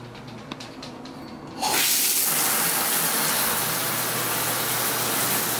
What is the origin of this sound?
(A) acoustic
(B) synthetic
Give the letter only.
A